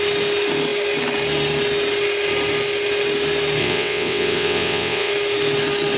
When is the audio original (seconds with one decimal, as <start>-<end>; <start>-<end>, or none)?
0.0-3.6; 5.1-6.0